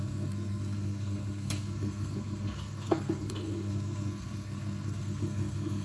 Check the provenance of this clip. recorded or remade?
remade